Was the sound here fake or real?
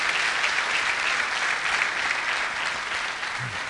real